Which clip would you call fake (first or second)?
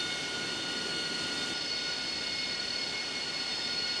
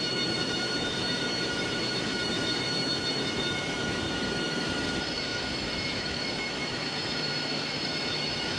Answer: second